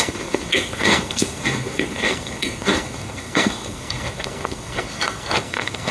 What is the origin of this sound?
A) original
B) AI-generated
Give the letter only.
B